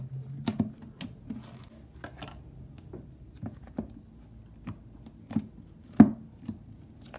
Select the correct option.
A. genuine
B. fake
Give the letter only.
A